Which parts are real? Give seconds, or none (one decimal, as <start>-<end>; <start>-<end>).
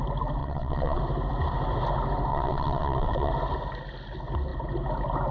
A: 0.0-0.4; 1.0-2.3; 3.3-5.3